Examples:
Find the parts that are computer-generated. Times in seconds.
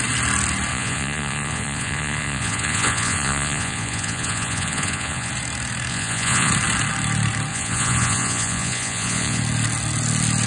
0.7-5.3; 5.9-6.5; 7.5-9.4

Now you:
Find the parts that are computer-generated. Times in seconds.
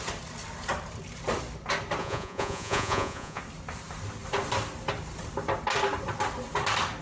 2.0-3.4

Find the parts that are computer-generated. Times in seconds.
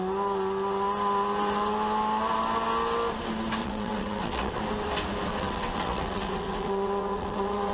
3.6-4.6; 5.3-7.7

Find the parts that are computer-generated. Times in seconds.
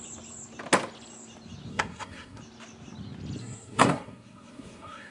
1.7-2.4; 3.4-5.1